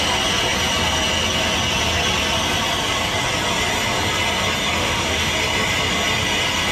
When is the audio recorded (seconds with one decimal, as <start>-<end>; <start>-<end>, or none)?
0.0-4.8; 5.3-6.7